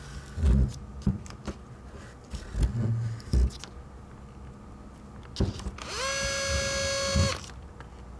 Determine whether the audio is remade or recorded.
recorded